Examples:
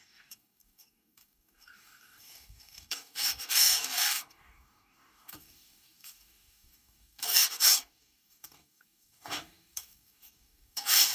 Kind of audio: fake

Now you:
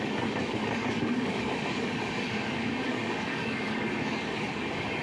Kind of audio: fake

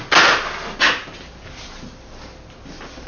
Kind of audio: real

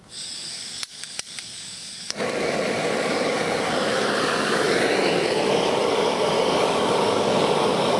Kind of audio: fake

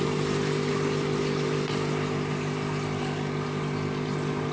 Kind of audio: real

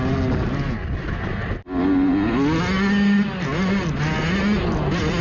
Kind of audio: real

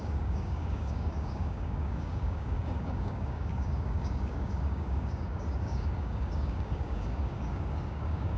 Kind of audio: fake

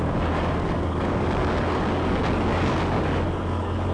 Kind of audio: fake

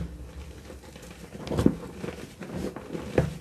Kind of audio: real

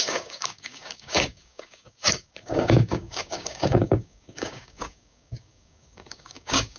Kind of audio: fake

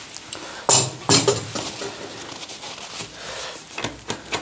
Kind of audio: real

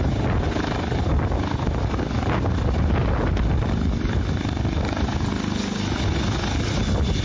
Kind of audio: real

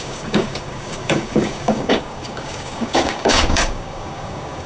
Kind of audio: fake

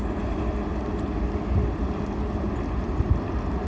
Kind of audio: real